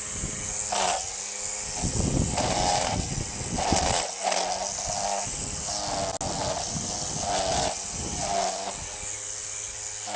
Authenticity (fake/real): real